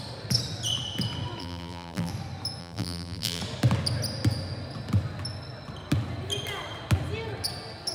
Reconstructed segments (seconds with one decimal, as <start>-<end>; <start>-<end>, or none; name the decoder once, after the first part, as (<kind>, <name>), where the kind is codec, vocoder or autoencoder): 1.4-2.1 (vocoder, BigVGAN v2); 2.6-3.4